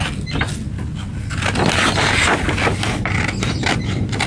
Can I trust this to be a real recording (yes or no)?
yes